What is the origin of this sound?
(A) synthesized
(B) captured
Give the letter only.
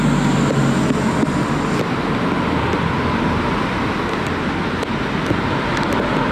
B